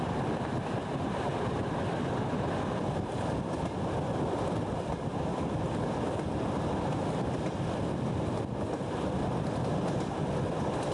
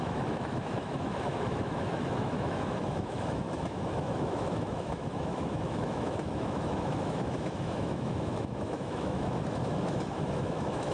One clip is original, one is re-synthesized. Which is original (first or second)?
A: first